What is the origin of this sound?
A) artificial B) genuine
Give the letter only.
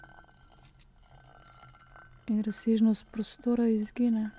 B